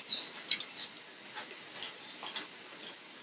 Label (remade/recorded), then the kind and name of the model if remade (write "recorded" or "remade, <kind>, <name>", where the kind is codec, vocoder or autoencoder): recorded